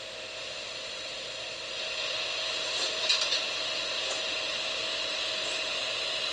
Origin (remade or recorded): recorded